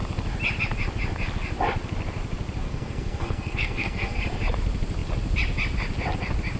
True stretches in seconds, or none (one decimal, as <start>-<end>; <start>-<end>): 0.0-2.6; 4.2-6.6